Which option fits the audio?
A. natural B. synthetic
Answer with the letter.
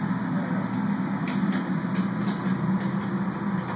A